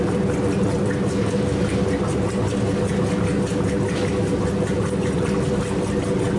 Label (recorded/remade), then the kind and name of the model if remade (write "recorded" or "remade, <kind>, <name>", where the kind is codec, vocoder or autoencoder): recorded